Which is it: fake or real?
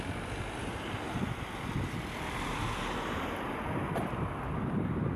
fake